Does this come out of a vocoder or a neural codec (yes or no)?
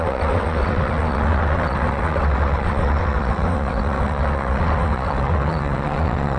yes